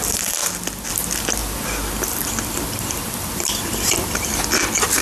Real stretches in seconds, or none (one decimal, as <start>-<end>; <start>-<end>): 0.0-1.4; 4.4-5.0